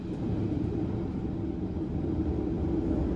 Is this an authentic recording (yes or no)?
yes